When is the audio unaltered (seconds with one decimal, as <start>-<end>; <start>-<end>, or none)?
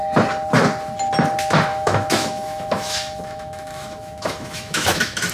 0.0-1.7